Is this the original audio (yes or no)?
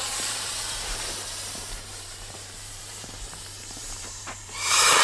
no